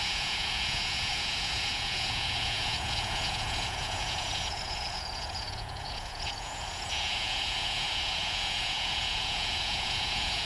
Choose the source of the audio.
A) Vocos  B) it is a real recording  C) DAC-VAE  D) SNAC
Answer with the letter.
A